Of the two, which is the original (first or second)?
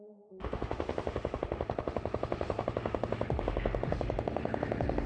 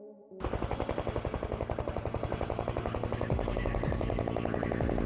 second